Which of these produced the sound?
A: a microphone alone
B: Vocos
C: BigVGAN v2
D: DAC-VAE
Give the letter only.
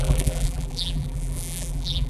C